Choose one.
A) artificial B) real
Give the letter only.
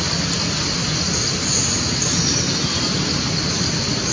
B